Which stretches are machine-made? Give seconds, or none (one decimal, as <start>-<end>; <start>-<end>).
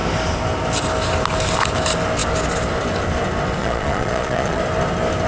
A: 3.6-4.6